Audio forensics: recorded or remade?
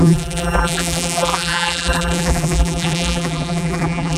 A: remade